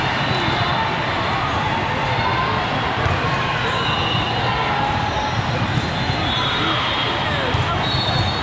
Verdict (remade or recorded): recorded